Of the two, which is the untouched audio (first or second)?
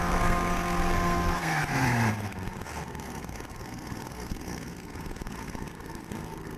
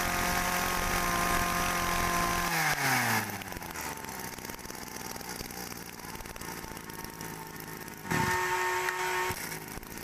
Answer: second